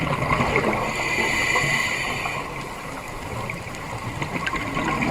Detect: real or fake real